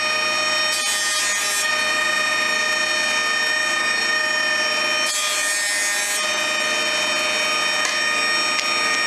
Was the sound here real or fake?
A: real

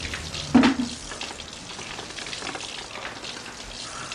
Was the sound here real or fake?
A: real